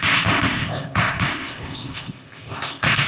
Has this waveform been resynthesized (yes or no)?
yes